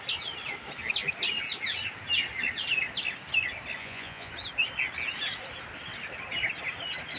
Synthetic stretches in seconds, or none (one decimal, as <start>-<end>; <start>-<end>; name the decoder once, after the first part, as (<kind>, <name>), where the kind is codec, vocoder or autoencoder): 3.8-4.3 (vocoder, Vocos)